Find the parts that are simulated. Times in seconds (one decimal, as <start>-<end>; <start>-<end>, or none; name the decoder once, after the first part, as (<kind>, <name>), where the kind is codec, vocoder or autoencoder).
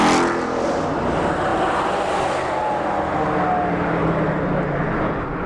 none